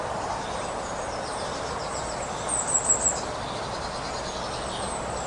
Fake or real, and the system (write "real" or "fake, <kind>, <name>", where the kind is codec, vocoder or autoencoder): real